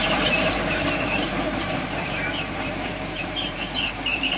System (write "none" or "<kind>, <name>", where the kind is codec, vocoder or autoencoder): vocoder, BigVGAN v2